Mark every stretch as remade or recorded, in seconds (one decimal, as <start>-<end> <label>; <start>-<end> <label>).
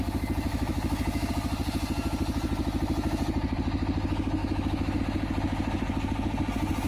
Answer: 0.0-0.5 recorded; 0.5-1.3 remade; 1.3-4.4 recorded; 4.4-5.0 remade; 5.0-6.9 recorded